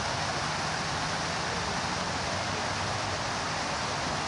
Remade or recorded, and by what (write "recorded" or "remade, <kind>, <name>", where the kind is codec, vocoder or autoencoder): recorded